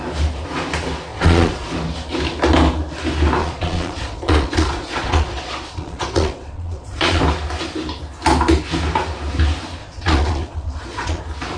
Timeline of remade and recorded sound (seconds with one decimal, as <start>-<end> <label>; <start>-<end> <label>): 0.0-1.1 recorded; 1.1-1.7 remade; 1.7-3.4 recorded; 3.4-7.2 remade; 7.2-9.8 recorded; 9.8-11.2 remade; 11.2-11.6 recorded